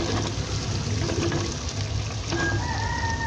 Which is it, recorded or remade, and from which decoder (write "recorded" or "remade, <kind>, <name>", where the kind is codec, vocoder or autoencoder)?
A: recorded